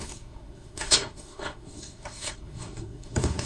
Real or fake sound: fake